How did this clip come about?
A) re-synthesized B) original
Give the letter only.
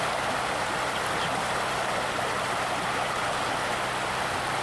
B